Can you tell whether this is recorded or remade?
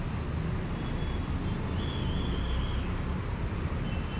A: recorded